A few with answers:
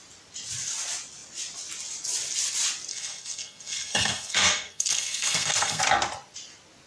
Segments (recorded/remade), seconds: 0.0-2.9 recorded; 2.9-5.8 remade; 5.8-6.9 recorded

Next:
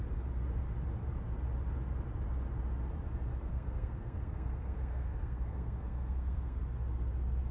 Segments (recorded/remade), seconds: 0.0-3.5 recorded; 3.5-6.6 remade; 6.6-7.5 recorded